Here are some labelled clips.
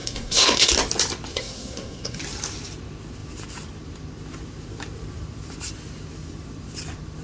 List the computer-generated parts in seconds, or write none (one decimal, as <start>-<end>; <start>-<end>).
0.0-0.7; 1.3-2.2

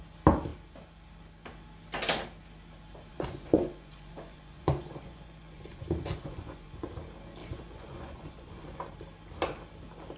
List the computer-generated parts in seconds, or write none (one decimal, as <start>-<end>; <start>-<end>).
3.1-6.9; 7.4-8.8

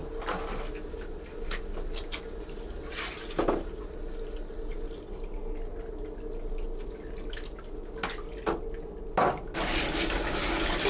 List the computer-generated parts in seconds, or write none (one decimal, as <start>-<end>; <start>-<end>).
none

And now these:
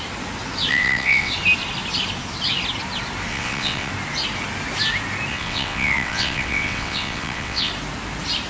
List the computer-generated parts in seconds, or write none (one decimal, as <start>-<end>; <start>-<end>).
0.7-1.3; 3.3-3.9; 5.3-7.7

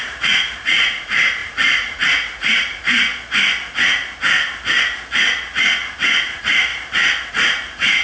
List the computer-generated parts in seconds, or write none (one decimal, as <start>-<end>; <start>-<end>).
0.0-3.1; 6.2-6.7; 7.3-8.0

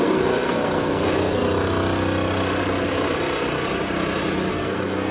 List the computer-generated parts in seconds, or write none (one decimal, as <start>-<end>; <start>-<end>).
0.0-1.4; 4.5-5.1